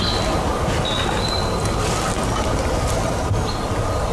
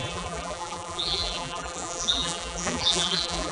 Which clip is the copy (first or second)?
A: second